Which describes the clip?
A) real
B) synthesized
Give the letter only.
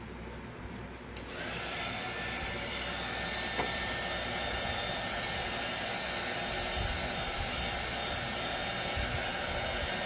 A